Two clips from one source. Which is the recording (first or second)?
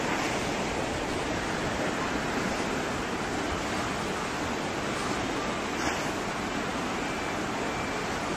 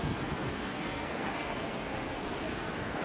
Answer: first